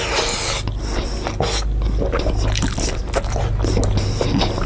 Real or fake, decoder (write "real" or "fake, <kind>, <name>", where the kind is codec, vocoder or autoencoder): real